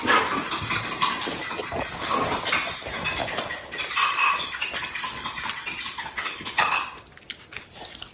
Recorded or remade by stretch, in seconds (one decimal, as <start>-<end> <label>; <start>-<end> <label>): 0.0-6.0 recorded; 6.0-6.8 remade; 6.8-8.1 recorded